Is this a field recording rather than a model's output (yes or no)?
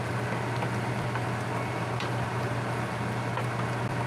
yes